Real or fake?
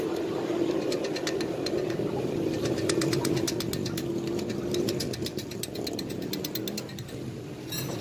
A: real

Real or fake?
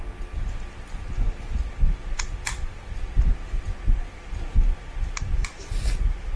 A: real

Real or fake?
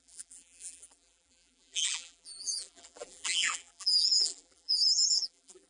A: fake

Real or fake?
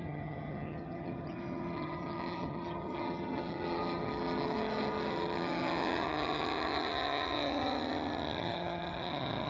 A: fake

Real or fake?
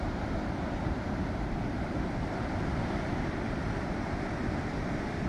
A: fake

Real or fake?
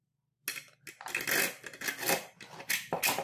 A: real